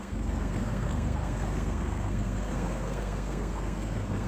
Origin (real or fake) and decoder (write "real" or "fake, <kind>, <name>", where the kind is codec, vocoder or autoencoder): fake, codec, SNAC